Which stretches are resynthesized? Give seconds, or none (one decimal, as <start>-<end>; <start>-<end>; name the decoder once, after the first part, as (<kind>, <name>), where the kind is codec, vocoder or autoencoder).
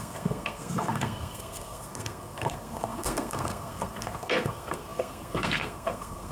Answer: 0.0-6.3 (codec, SNAC)